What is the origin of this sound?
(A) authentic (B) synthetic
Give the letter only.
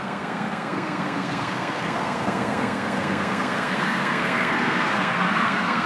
B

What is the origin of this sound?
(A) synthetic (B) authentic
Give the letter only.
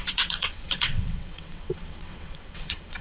A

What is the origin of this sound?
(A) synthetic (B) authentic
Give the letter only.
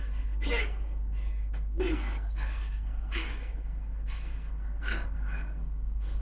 A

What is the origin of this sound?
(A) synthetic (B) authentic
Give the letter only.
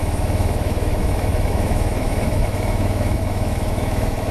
A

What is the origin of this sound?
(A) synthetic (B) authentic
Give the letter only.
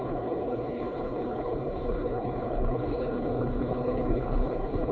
A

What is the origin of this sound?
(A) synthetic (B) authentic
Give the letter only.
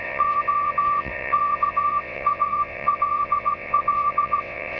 A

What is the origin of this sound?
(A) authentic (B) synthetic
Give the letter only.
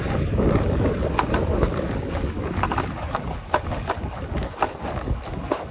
B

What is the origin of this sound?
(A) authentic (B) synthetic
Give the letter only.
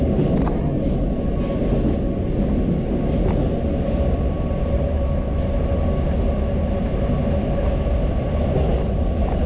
A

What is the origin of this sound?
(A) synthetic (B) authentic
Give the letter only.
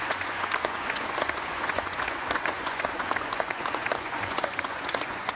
A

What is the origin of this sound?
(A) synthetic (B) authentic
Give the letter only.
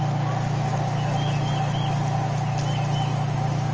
B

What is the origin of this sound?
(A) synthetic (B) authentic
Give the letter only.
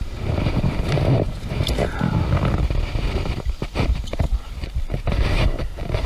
A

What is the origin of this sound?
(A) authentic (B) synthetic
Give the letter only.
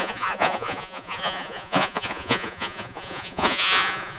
B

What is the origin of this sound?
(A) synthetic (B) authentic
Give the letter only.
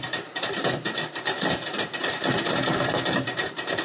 A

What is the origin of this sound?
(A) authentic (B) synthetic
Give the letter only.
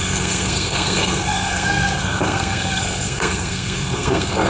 B